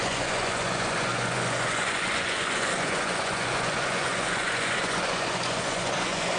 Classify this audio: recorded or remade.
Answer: remade